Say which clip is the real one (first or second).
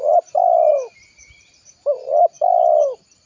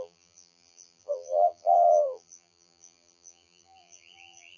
first